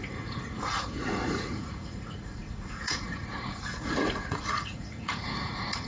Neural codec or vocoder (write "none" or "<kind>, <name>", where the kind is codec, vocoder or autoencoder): vocoder, Vocos